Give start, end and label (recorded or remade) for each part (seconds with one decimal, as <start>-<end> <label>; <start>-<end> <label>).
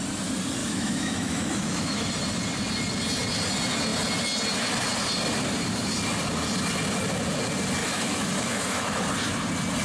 0.0-0.6 recorded; 0.6-2.1 remade; 2.1-7.8 recorded; 7.8-9.0 remade; 9.0-9.8 recorded